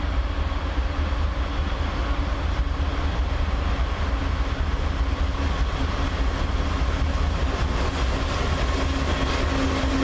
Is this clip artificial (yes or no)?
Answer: no